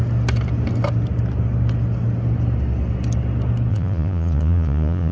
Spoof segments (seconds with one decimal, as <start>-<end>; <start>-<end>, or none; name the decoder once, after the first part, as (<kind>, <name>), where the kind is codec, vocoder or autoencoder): 3.7-5.1 (vocoder, Vocos)